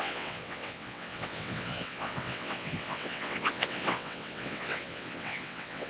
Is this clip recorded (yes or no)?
no